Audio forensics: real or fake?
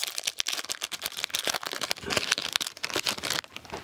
real